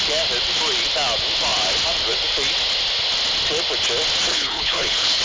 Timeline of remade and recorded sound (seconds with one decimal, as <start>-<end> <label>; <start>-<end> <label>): 0.0-4.3 recorded; 4.3-5.2 remade